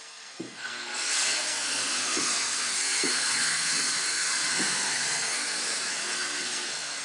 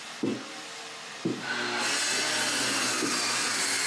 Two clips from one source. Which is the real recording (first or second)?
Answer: second